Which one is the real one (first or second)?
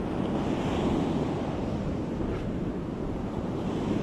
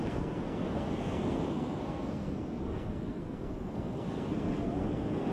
first